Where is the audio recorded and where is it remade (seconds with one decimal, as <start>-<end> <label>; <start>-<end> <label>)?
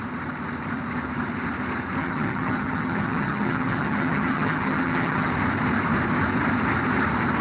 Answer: 0.0-2.0 recorded; 2.0-5.3 remade; 5.3-7.4 recorded